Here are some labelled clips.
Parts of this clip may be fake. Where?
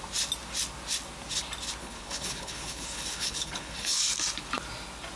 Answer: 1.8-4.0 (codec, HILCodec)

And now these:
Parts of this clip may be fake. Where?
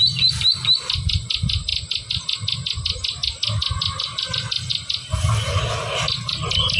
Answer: none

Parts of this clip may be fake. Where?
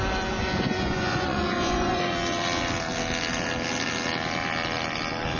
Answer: 0.4-2.0 (vocoder, Vocos)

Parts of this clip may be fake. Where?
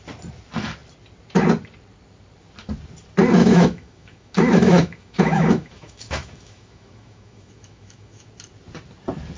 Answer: 3.4-8.3 (autoencoder, DAC-VAE)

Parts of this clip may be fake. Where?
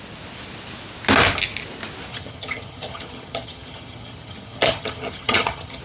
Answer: 2.1-5.8 (vocoder, HiFi-GAN)